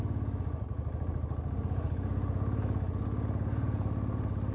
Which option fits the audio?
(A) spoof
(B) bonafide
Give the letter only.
B